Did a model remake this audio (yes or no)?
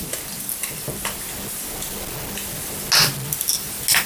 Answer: no